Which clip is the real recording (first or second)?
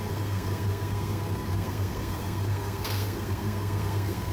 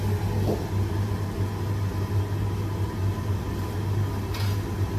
second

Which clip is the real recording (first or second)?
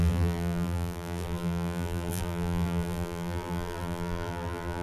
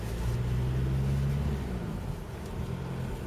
second